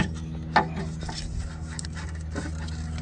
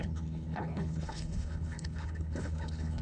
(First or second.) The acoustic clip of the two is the first